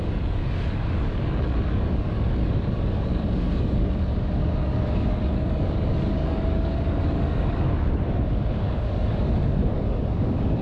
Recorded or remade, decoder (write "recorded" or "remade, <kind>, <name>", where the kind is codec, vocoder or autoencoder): remade, codec, DAC